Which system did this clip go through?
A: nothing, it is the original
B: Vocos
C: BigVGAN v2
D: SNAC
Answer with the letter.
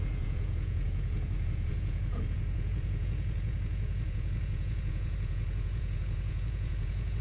B